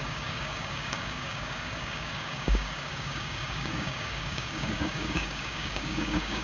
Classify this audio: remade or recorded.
remade